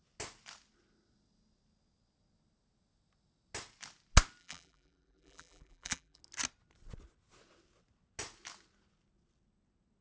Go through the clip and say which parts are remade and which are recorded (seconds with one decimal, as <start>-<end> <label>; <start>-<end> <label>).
0.0-4.4 recorded; 4.4-6.2 remade; 6.2-10.0 recorded